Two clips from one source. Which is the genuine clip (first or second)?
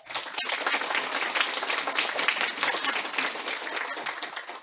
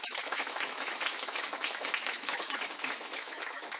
first